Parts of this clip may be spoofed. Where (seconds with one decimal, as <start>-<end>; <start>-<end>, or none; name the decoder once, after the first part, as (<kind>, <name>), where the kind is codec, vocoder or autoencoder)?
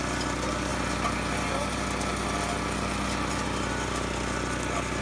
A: none